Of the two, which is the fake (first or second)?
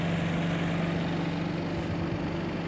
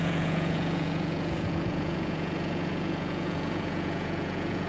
second